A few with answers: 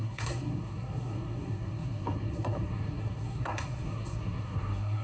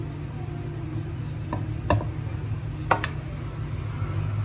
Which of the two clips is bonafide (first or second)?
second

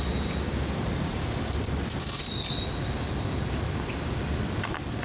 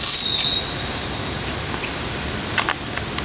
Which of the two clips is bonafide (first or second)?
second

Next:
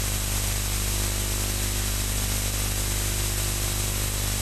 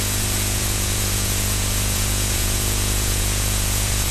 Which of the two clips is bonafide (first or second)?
first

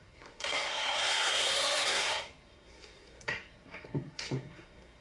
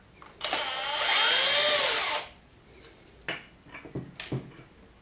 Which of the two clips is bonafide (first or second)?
second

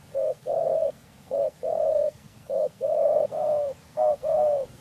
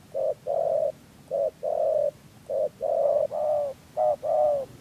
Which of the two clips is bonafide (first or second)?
second